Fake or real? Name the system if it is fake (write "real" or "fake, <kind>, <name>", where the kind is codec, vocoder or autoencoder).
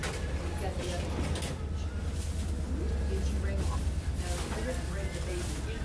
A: real